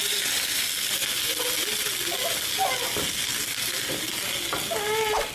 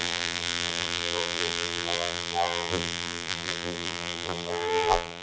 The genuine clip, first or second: first